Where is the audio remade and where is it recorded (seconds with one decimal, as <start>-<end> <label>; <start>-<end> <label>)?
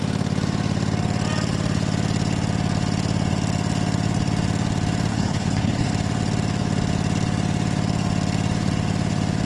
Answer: 0.0-5.1 recorded; 5.1-5.9 remade; 5.9-9.5 recorded